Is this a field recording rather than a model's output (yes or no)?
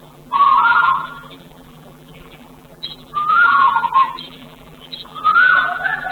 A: no